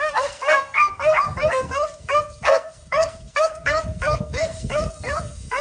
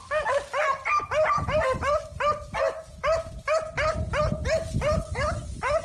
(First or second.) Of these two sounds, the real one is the second